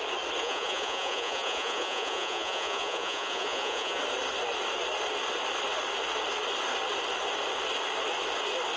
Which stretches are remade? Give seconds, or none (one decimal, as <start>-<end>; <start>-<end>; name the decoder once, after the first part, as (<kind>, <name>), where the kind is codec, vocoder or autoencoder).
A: 0.4-4.0 (vocoder, Vocos)